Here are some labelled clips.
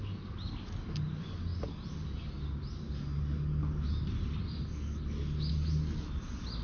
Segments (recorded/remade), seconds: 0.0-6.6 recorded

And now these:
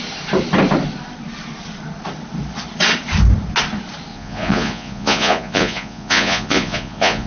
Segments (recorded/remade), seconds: 0.0-4.1 recorded; 4.1-7.3 remade

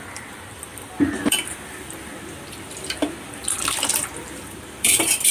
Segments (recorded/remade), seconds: 0.0-5.3 remade

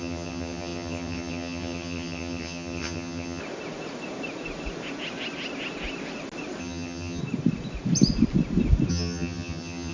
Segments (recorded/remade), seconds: 0.0-3.4 remade; 3.4-6.6 recorded; 6.6-7.2 remade; 7.2-8.9 recorded; 8.9-9.9 remade

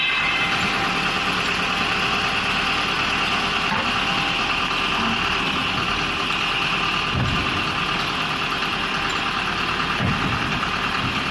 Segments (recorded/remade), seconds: 0.0-11.3 recorded

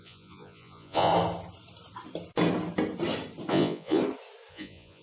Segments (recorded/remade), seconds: 0.0-1.1 remade; 1.1-3.5 recorded; 3.5-4.0 remade; 4.0-4.5 recorded; 4.5-5.0 remade

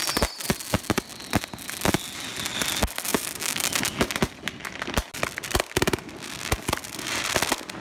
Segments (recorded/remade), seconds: 0.0-3.1 recorded; 3.1-3.8 remade; 3.8-7.8 recorded